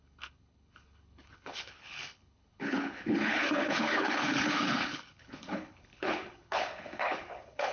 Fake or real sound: fake